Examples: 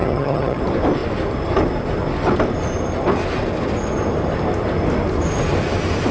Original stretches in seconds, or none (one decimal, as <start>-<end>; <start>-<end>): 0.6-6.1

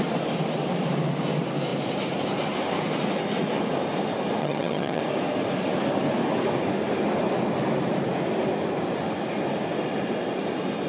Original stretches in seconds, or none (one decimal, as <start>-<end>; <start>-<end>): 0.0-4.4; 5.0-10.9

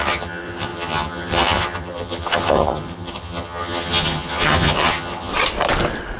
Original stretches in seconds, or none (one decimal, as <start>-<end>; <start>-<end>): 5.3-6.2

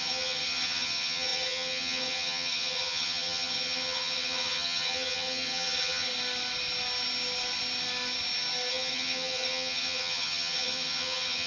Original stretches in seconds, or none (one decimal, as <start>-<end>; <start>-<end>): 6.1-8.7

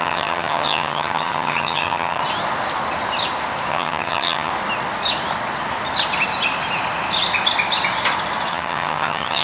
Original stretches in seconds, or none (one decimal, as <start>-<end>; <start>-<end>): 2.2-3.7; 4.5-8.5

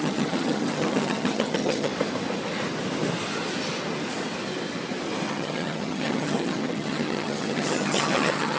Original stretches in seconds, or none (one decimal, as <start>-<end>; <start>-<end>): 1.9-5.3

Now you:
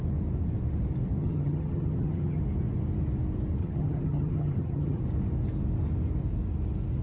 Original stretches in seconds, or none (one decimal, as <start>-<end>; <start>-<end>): 0.0-1.2; 2.4-3.6; 5.0-7.0